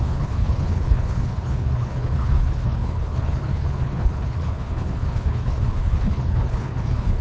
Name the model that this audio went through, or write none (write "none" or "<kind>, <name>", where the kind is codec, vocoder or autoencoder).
codec, HILCodec